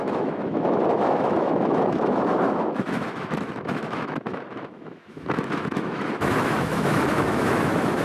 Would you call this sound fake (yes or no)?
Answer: yes